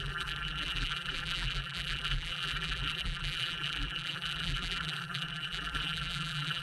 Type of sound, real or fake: fake